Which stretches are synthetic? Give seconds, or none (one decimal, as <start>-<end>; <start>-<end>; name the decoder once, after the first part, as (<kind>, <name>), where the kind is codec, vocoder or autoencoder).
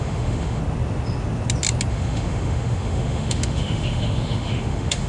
0.0-0.6 (autoencoder, DAC-VAE); 1.9-5.1